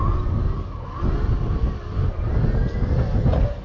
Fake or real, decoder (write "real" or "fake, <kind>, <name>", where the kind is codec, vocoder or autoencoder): real